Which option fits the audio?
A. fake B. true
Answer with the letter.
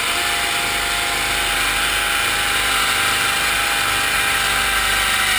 B